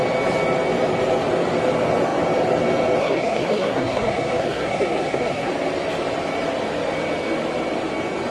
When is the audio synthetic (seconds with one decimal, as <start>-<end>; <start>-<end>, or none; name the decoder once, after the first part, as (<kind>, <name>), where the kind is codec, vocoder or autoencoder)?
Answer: 3.0-5.5 (codec, SNAC)